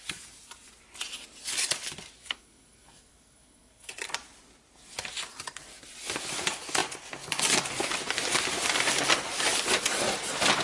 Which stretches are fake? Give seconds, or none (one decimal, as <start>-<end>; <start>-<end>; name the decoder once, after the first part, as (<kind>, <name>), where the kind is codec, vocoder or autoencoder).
2.2-3.9 (codec, SNAC)